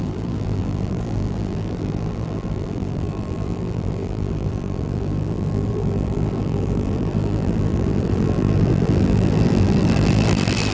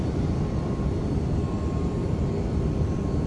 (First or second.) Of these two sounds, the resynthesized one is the first